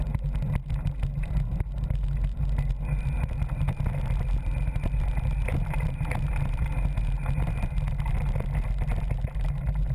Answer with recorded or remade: recorded